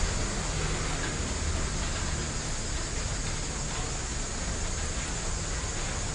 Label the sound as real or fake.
real